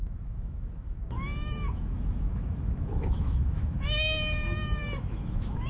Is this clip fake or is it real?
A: fake